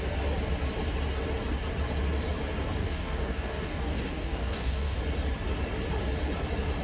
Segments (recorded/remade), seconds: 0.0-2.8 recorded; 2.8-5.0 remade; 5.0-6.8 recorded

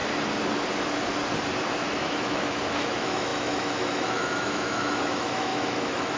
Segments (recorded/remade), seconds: 0.0-2.0 recorded; 2.0-6.2 remade

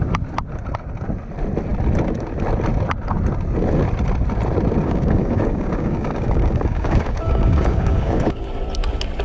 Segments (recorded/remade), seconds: 0.0-4.8 recorded; 4.8-8.5 remade; 8.5-9.2 recorded

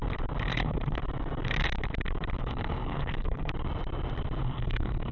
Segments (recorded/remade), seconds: 0.0-0.5 recorded; 0.5-1.0 remade; 1.0-2.4 recorded; 2.4-3.5 remade; 3.5-4.4 recorded; 4.4-5.1 remade

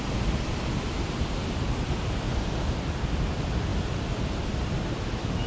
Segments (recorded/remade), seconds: 0.0-3.7 recorded; 3.7-4.7 remade; 4.7-5.5 recorded

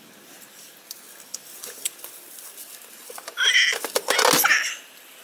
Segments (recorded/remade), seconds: 0.0-1.4 recorded; 1.4-2.1 remade; 2.1-2.6 recorded; 2.6-4.1 remade; 4.1-5.2 recorded